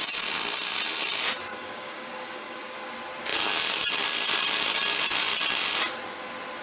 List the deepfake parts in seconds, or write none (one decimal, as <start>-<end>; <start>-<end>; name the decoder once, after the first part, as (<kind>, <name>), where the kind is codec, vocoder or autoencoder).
1.5-2.9 (codec, DAC)